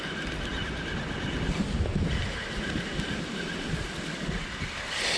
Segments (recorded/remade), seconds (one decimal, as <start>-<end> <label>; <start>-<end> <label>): 0.0-5.2 recorded